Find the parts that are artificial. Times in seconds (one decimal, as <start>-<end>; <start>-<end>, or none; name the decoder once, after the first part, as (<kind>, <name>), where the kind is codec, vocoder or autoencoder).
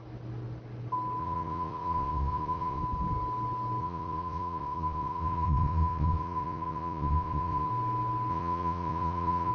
1.2-2.8 (vocoder, Vocos); 3.8-7.7; 8.3-9.5